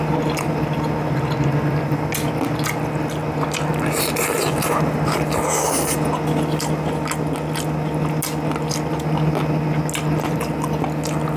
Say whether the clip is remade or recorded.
recorded